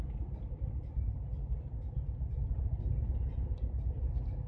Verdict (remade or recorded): recorded